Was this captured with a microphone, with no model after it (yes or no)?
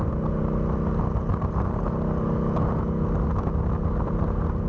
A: yes